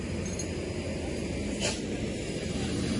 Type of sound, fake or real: real